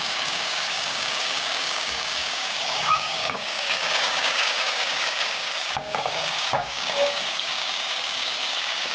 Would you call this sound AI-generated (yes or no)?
yes